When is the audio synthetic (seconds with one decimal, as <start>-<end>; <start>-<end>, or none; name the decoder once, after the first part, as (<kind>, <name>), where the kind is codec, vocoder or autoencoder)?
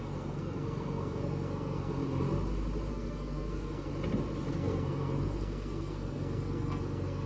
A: 0.0-2.0 (codec, SNAC); 2.9-3.9; 4.5-7.3